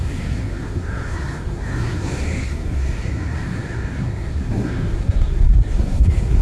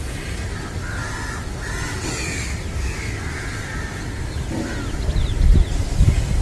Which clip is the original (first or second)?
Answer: second